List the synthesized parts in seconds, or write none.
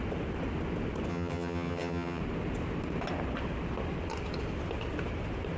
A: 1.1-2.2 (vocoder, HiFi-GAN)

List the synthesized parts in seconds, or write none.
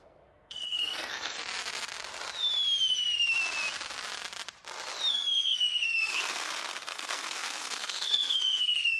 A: 0.0-1.4 (codec, SNAC); 5.1-9.0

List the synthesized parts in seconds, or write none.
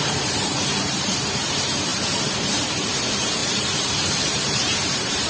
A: 0.0-1.9 (vocoder, BigVGAN v2); 3.0-5.3